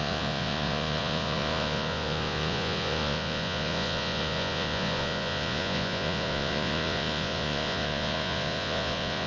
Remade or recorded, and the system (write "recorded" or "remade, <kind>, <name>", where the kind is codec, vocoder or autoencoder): remade, vocoder, Vocos